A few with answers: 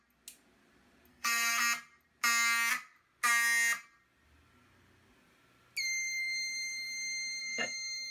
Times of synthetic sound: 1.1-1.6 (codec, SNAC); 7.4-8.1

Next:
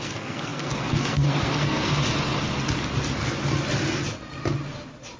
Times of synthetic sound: 0.0-1.9 (codec, SNAC)

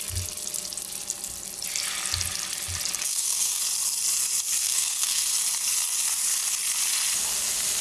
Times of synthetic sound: 3.0-3.6 (codec, SNAC); 4.6-5.2

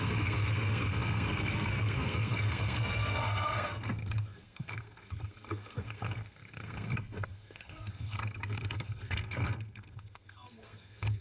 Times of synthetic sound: 0.0-11.2 (codec, SNAC)

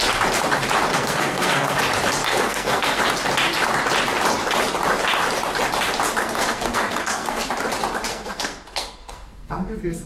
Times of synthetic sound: 0.9-1.8 (codec, SNAC); 2.2-3.0; 6.2-7.5; 8.1-10.1

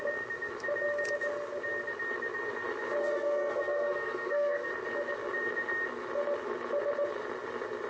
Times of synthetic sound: 3.0-4.7 (codec, SNAC)